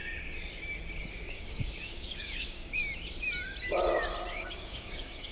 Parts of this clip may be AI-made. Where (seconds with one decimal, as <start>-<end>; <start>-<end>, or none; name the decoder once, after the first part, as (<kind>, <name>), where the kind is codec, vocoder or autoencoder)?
1.1-2.8 (codec, DAC); 4.3-5.3